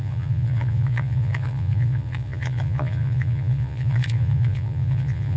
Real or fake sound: fake